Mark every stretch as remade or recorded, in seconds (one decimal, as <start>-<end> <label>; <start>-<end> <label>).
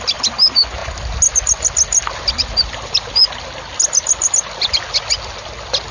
0.0-0.8 remade; 0.8-2.3 recorded; 2.3-3.2 remade; 3.2-5.9 recorded